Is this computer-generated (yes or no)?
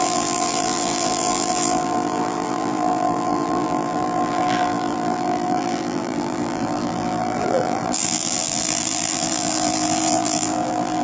yes